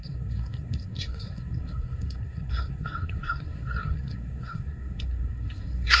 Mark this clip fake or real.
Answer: fake